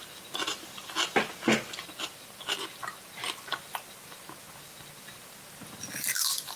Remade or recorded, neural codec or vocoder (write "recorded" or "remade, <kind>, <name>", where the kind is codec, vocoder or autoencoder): recorded